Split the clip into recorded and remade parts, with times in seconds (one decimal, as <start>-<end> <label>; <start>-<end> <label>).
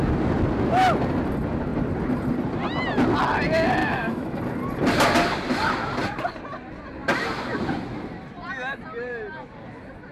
0.0-3.8 recorded; 3.8-4.4 remade; 4.4-10.1 recorded